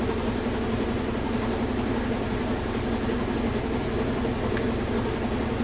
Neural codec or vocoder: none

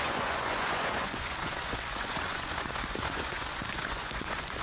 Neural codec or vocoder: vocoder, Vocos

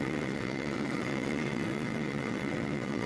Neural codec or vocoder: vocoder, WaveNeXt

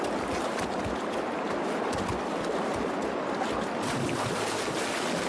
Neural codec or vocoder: none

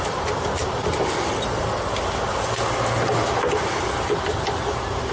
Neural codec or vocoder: none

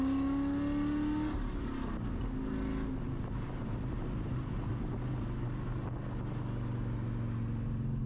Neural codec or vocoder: none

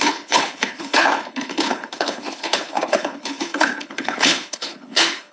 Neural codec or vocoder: codec, HILCodec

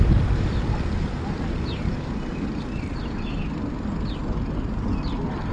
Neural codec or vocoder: none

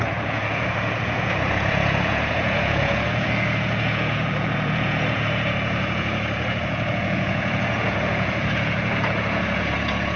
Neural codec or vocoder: vocoder, Vocos